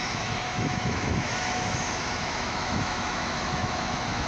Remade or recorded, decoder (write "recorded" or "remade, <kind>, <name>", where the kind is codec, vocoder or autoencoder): remade, autoencoder, DAC-VAE